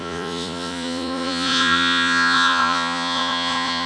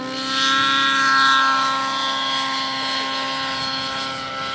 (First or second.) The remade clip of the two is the first